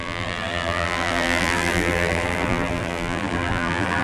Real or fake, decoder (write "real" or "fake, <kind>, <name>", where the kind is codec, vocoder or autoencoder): fake, vocoder, BigVGAN v2